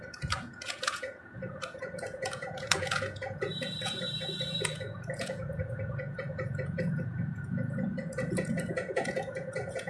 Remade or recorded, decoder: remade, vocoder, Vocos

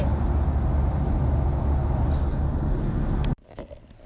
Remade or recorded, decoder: recorded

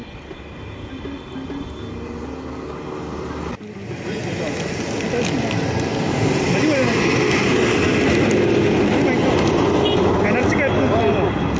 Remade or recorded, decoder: recorded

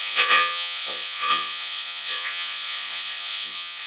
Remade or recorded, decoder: remade, vocoder, Vocos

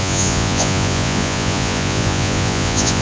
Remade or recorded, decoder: remade, vocoder, Vocos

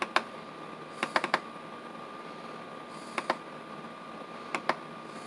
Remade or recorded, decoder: recorded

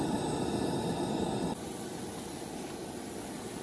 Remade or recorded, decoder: recorded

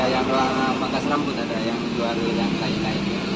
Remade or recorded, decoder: recorded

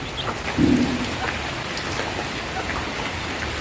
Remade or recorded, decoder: recorded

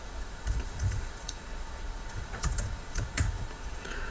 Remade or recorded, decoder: remade, vocoder, Vocos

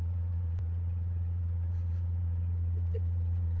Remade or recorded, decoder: remade, vocoder, Vocos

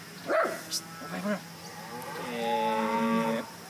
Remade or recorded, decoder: recorded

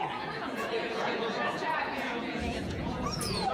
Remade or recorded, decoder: remade, vocoder, Vocos